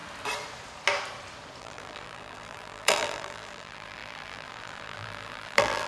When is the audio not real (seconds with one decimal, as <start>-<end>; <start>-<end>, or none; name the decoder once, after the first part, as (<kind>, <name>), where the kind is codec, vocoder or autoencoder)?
1.6-5.9 (vocoder, BigVGAN v2)